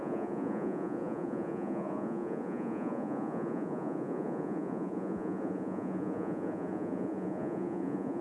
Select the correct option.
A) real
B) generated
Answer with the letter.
B